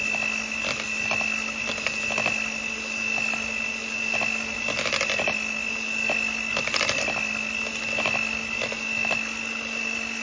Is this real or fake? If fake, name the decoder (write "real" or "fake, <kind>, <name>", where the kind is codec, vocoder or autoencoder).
real